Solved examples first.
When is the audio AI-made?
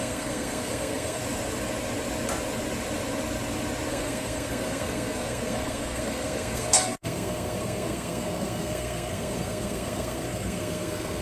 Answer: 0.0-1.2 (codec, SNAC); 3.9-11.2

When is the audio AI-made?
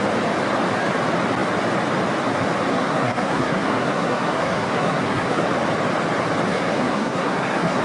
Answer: 2.7-5.5 (codec, SNAC); 6.5-7.8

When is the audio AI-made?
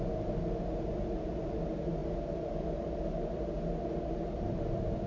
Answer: none